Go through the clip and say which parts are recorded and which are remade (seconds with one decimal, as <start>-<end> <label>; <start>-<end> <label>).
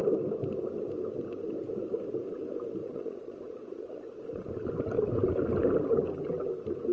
0.0-2.8 recorded; 2.8-4.2 remade; 4.2-6.9 recorded